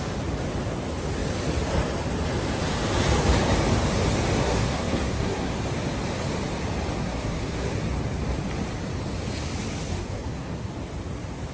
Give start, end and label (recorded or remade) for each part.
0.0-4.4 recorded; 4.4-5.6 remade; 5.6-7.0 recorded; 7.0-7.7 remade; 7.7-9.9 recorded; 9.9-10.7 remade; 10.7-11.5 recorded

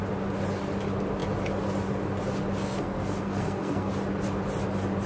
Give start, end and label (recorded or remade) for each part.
0.0-2.6 recorded; 2.6-3.9 remade; 3.9-5.1 recorded

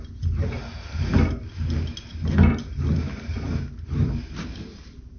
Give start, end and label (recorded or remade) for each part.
0.0-4.0 recorded; 4.0-5.2 remade

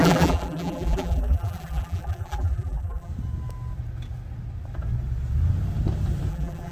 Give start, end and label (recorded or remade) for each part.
0.0-3.1 remade; 3.1-6.3 recorded; 6.3-6.7 remade